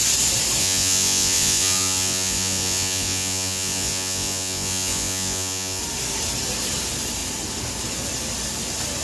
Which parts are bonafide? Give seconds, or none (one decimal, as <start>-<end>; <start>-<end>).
0.0-0.6; 5.8-9.0